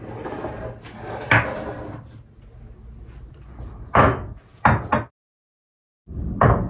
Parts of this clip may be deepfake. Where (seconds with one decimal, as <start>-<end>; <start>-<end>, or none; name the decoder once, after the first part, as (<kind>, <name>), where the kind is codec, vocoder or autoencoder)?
none